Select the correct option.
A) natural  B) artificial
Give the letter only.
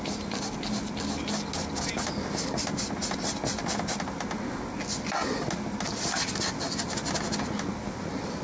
A